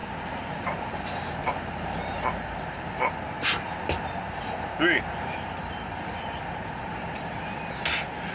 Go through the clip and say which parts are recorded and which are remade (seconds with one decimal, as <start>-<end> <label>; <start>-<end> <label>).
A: 0.0-2.9 remade; 2.9-8.3 recorded